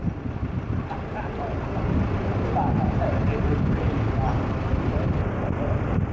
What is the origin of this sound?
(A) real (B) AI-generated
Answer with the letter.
A